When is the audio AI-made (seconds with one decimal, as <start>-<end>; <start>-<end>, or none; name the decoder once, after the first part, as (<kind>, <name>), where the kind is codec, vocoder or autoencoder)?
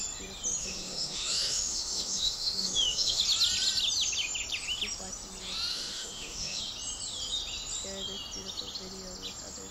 0.6-3.2 (autoencoder, DAC-VAE); 5.7-6.6